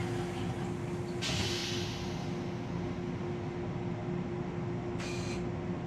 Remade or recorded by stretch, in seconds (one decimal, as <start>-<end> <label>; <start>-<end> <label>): 0.0-5.9 recorded